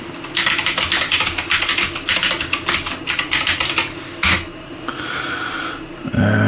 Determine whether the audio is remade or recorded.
recorded